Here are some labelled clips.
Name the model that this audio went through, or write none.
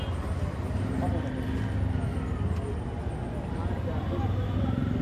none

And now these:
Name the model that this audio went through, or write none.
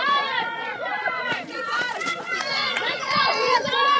vocoder, Vocos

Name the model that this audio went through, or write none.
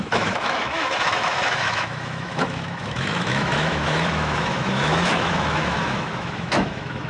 autoencoder, DAC-VAE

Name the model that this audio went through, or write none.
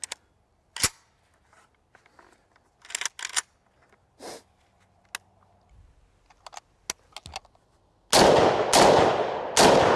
none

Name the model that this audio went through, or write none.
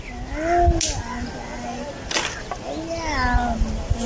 none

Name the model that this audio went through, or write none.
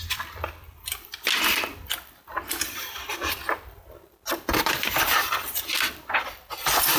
vocoder, BigVGAN v2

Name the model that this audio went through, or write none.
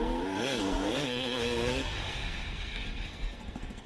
codec, SNAC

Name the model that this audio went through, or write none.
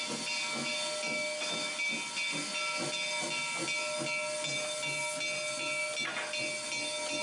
none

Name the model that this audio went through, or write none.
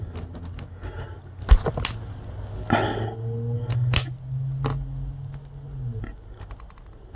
none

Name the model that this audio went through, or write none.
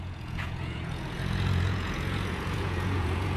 vocoder, Vocos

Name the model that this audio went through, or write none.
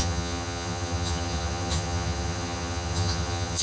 vocoder, HiFi-GAN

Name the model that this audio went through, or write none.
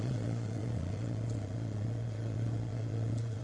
vocoder, Vocos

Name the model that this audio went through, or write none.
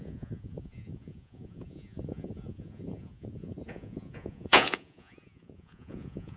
vocoder, Vocos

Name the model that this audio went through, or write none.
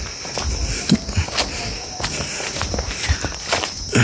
none